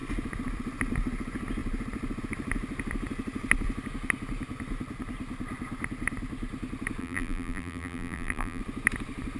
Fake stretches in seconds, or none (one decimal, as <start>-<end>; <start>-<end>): 7.0-8.6